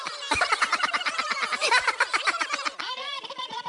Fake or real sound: fake